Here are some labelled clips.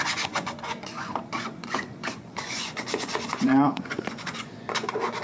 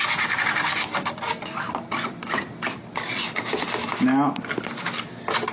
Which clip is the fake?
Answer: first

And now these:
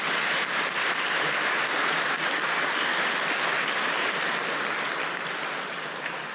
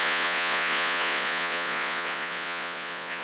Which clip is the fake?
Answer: second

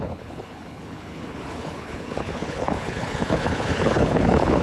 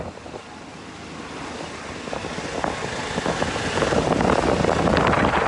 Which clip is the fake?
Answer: first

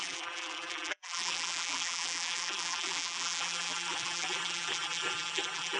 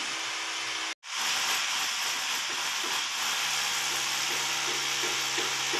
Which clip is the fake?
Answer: first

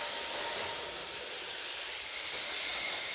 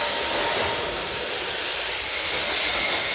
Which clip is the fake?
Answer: first